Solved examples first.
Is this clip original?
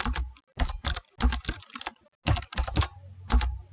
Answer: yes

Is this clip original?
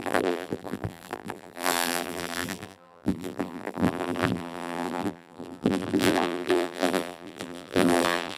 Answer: no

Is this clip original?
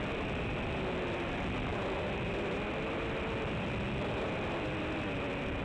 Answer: no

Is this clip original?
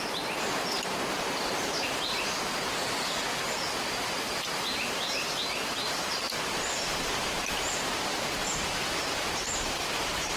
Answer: no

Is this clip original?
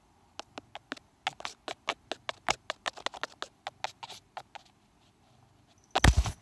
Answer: yes